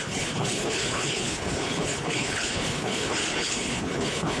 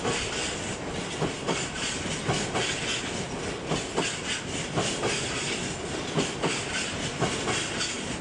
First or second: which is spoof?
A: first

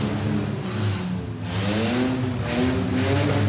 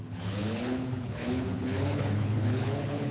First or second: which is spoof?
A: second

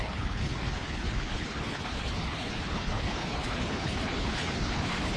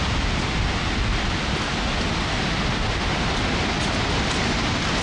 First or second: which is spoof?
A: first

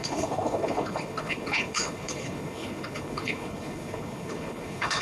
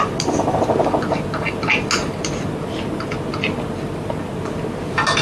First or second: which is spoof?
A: first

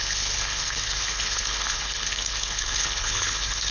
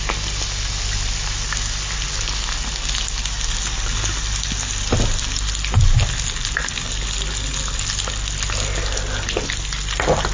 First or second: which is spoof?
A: first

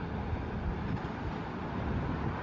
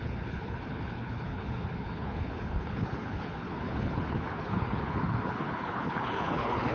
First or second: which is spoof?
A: second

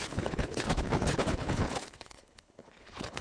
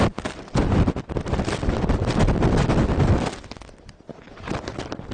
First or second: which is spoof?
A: first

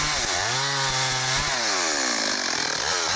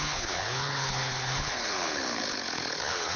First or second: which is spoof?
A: second